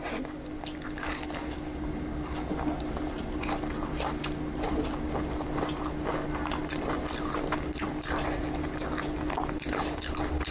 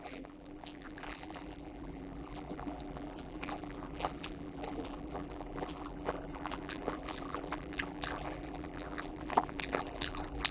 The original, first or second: first